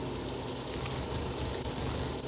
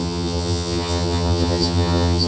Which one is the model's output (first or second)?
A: second